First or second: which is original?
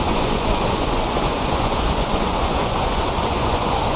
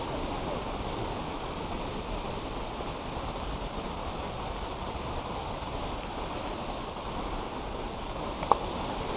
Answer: second